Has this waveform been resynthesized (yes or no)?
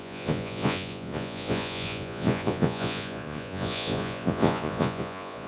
yes